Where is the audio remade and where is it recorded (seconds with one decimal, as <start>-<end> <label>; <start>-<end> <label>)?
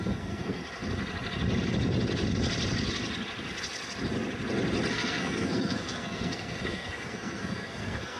0.0-0.6 remade; 0.6-4.9 recorded; 4.9-8.2 remade